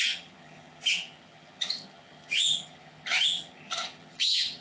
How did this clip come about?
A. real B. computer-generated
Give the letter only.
B